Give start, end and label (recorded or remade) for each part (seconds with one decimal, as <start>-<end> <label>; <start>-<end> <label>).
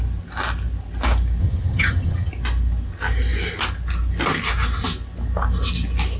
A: 0.0-1.4 recorded; 1.4-2.3 remade; 2.3-6.2 recorded